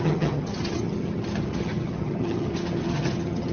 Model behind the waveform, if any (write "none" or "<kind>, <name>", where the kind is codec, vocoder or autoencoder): vocoder, HiFi-GAN